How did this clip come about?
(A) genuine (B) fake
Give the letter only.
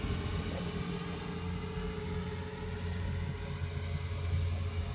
A